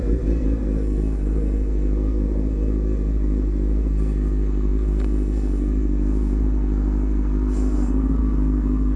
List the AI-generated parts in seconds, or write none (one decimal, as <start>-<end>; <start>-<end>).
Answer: 0.0-9.0